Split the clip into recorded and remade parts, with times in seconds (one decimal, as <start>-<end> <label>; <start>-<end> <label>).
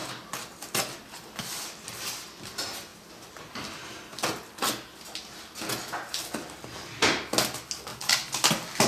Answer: 0.0-8.9 recorded